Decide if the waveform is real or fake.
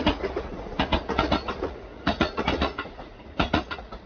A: fake